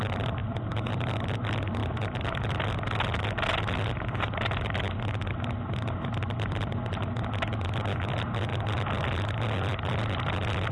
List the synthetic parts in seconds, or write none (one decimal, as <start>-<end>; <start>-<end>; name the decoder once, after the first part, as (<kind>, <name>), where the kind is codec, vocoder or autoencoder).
0.4-0.9 (vocoder, BigVGAN v2)